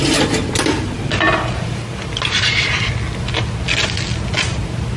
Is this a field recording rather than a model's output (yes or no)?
yes